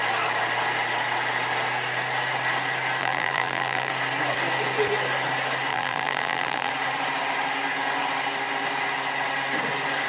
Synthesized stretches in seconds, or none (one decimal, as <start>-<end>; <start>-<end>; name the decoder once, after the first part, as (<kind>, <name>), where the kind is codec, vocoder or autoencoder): 3.0-3.9 (vocoder, BigVGAN v2); 5.7-6.7